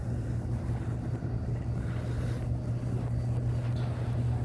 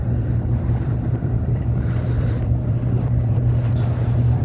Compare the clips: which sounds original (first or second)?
first